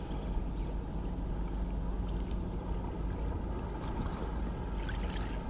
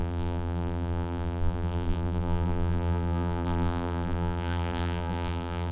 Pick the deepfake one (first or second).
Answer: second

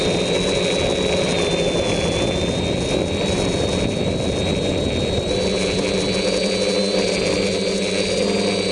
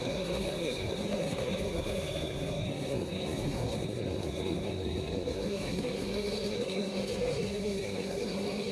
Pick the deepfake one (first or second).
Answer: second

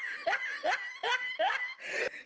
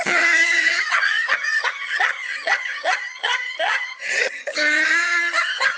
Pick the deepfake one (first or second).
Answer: second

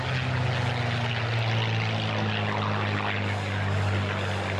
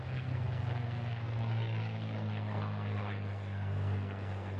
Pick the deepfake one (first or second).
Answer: second